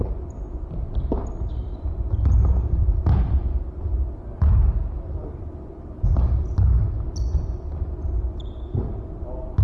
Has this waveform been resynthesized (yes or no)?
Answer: no